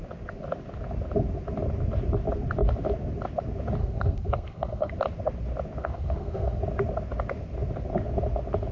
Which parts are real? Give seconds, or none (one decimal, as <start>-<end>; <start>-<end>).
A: 0.0-3.8; 4.9-5.8; 6.6-8.7